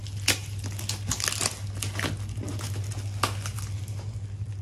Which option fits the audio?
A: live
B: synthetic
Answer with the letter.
A